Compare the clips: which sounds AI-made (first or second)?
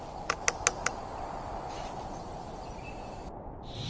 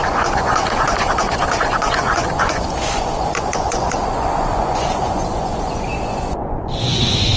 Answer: second